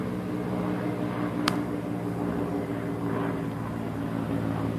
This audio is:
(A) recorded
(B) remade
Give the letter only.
B